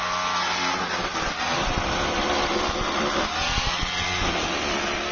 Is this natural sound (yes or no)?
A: yes